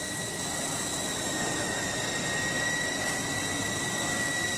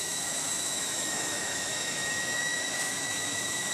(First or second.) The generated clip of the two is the second